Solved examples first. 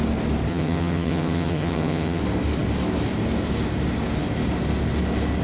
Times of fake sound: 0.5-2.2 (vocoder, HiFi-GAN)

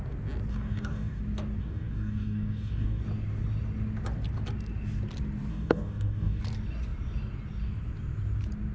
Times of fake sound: 0.5-1.2 (codec, DAC); 1.6-3.0; 5.5-6.4